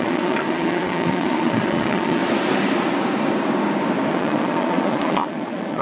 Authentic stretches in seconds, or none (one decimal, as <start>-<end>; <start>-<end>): 2.2-4.1